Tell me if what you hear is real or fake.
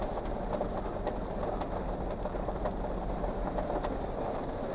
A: real